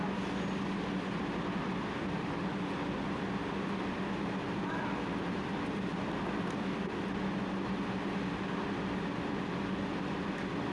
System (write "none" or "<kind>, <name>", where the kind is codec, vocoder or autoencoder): none